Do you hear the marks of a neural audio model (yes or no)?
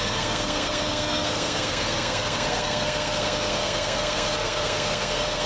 yes